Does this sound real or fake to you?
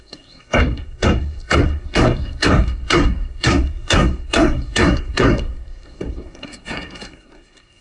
fake